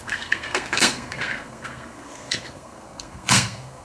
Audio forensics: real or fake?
fake